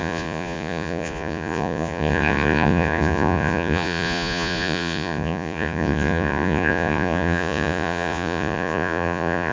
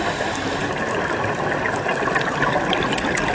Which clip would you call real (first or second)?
second